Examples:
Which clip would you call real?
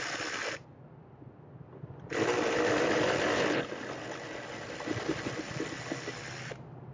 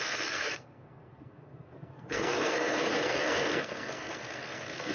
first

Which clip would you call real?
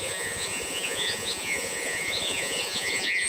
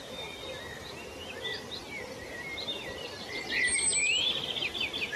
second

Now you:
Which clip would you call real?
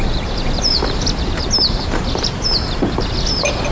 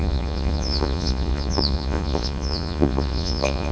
first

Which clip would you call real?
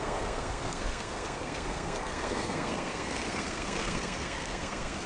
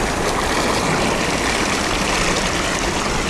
second